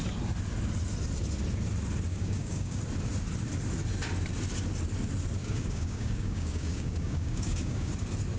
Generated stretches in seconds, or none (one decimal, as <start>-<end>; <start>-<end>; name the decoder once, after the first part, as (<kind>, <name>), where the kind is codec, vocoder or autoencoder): 2.1-2.8 (codec, DAC); 5.4-7.9